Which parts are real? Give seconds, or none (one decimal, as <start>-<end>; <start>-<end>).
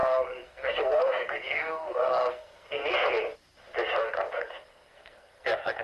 2.8-4.0